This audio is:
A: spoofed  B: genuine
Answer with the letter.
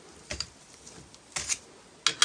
B